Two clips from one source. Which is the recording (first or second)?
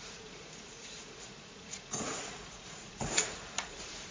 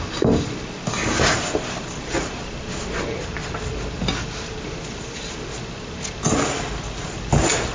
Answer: second